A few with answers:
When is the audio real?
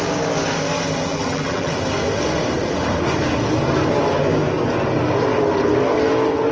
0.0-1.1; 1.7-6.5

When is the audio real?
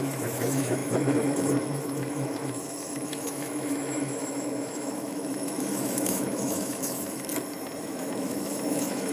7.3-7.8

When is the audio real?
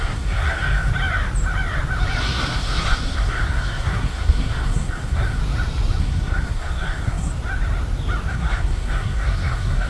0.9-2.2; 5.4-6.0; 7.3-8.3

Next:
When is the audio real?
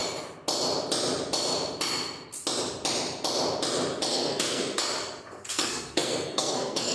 0.0-4.1; 4.8-5.4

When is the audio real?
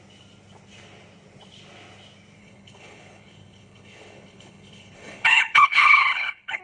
0.0-2.4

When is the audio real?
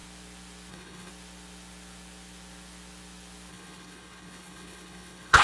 0.0-0.7; 1.1-3.5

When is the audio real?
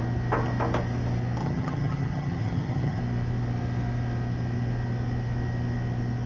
0.0-1.4; 3.0-6.3